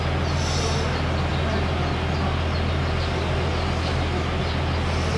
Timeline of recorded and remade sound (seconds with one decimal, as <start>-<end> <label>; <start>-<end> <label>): 0.0-5.2 recorded